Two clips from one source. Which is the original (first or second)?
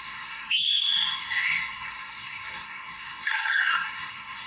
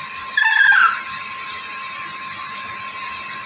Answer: second